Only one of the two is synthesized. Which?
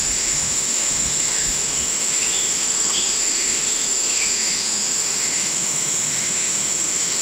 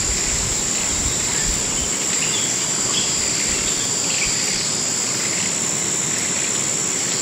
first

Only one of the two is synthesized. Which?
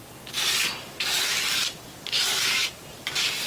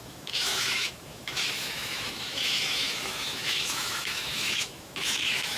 second